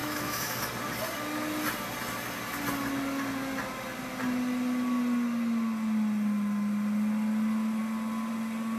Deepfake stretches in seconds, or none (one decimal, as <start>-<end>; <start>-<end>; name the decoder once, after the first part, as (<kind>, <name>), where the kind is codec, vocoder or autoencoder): 0.0-0.6 (autoencoder, DAC-VAE)